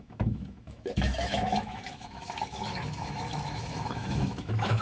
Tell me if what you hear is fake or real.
fake